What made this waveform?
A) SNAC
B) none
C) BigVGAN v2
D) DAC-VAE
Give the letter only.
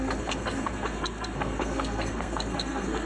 A